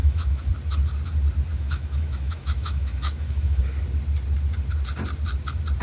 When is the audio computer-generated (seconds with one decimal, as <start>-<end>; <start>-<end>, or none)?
0.0-0.5; 1.5-3.6

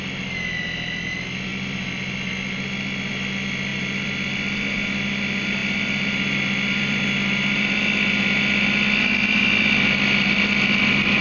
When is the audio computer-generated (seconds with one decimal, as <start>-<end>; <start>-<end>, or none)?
none

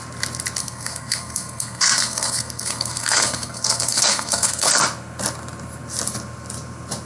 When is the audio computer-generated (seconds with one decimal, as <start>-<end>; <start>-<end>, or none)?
0.6-4.7

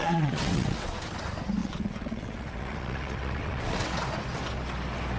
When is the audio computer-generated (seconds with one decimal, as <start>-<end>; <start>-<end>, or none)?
0.0-0.9; 1.6-4.0

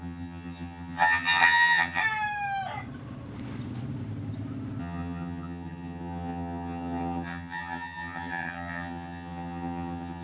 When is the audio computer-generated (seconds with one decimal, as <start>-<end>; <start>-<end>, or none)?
0.0-2.0; 4.8-10.2

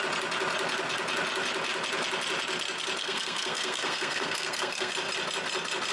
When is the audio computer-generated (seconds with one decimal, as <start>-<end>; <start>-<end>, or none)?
3.0-4.9

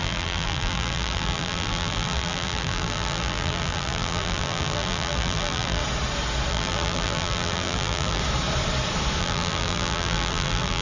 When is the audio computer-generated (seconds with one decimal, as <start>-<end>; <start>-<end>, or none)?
0.0-5.8; 6.5-8.2; 9.2-10.8

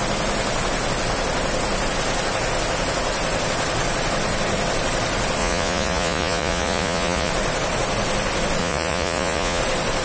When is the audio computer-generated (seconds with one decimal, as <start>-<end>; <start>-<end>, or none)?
5.4-7.3; 8.6-9.6